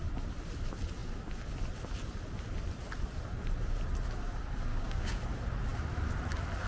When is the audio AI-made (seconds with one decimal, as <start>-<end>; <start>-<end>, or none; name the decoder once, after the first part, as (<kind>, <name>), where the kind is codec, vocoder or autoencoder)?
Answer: 4.7-5.2 (codec, DAC)